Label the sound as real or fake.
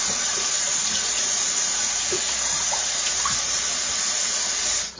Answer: fake